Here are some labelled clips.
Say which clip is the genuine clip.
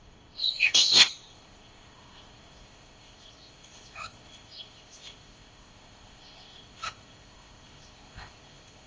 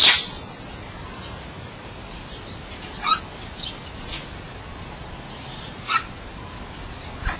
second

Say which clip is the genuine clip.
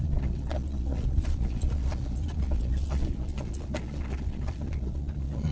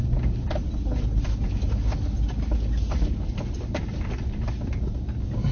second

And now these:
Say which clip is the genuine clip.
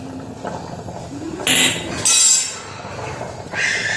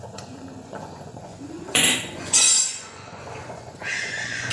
first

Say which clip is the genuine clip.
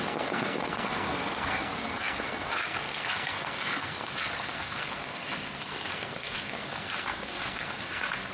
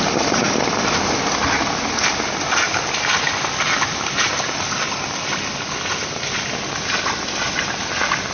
second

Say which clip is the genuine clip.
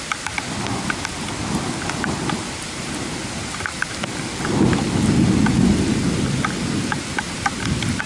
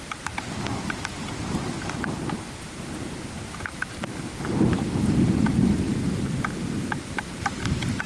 first